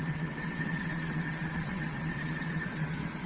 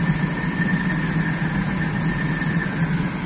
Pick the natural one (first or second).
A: second